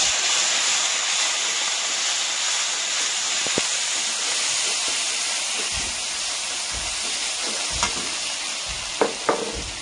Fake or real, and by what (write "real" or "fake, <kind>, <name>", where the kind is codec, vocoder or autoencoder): real